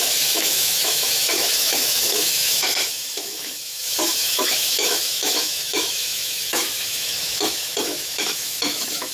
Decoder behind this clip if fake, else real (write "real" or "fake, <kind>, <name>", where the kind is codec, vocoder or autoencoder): fake, autoencoder, DAC-VAE